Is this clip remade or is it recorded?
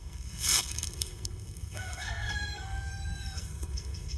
remade